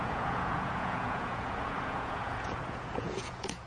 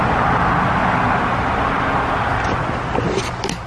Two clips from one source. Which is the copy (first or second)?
first